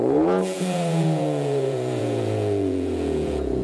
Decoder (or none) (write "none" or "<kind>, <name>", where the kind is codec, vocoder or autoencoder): vocoder, Vocos